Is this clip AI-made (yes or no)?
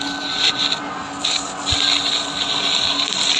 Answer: no